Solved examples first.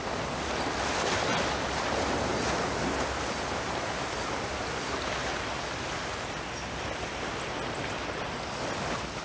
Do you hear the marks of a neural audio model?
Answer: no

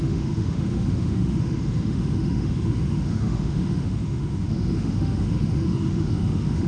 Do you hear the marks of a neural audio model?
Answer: yes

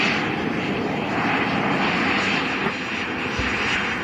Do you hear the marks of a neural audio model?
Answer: no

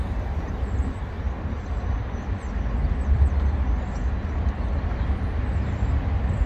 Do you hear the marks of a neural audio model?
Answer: no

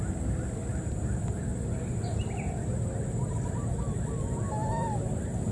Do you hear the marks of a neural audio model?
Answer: no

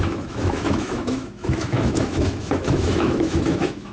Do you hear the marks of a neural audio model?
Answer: yes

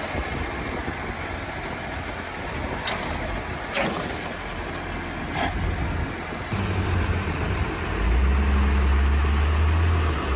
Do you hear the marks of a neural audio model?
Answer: no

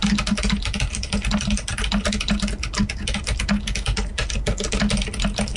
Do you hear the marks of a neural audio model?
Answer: no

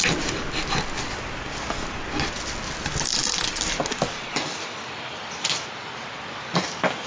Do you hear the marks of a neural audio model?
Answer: no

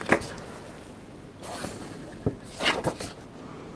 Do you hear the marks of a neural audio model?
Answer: no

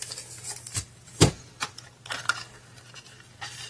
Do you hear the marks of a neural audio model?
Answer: yes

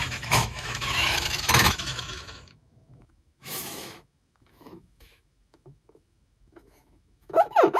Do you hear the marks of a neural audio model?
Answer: yes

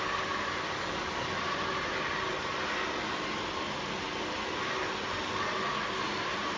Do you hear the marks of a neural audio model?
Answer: no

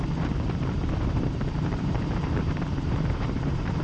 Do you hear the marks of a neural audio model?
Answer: yes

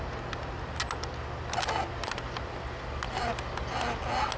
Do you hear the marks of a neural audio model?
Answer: no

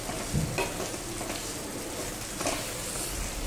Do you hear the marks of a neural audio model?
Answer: no